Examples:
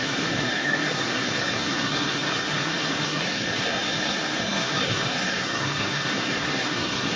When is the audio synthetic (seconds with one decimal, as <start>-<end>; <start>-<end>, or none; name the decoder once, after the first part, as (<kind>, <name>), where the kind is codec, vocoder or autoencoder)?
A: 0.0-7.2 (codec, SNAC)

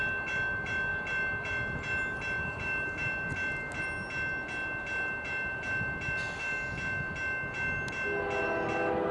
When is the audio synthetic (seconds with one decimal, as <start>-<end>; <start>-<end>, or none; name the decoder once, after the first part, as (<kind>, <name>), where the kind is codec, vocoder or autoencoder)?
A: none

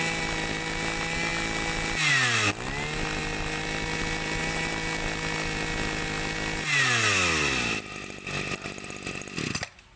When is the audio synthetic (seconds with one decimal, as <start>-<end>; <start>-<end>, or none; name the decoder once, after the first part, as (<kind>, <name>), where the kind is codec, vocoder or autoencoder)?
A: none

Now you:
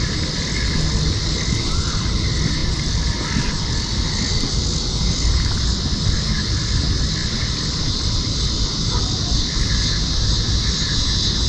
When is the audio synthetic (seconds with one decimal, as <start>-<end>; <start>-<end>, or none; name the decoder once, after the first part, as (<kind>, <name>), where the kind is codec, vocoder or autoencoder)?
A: 2.6-3.2 (vocoder, BigVGAN v2); 7.2-8.2

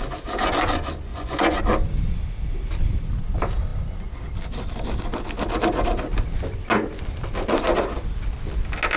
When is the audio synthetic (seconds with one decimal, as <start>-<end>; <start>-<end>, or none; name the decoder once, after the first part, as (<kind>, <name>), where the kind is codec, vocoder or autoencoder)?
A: 1.1-1.6 (vocoder, Vocos)

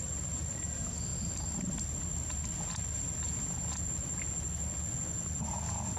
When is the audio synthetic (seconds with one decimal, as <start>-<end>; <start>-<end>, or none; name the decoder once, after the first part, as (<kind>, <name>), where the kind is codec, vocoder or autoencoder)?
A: none

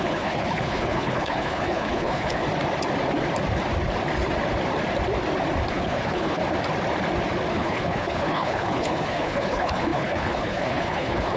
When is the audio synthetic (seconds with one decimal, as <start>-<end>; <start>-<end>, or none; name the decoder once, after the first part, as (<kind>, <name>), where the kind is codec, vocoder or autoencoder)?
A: 0.0-2.4 (codec, HILCodec); 5.7-6.4; 7.5-11.4